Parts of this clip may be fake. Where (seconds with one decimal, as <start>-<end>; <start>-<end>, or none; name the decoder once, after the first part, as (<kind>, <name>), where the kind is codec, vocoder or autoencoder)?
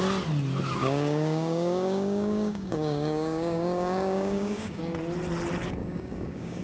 0.8-4.8 (codec, DAC); 5.8-6.6